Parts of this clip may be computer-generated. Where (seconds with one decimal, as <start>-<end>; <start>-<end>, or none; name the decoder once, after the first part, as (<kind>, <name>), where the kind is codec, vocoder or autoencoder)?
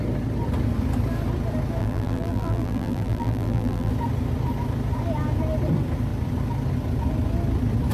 1.8-3.9 (vocoder, BigVGAN v2)